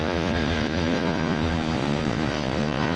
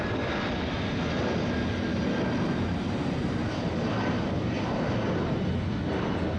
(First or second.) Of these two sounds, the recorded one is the second